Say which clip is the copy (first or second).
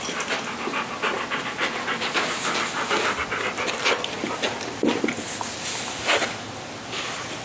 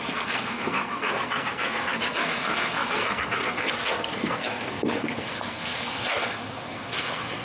second